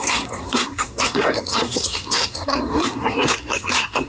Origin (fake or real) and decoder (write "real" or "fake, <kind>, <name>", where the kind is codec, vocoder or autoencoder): fake, codec, SNAC